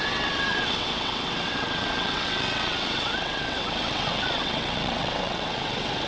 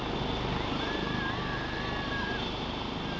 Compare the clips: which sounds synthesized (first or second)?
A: first